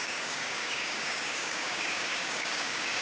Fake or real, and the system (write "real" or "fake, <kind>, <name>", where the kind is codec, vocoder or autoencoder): fake, codec, DAC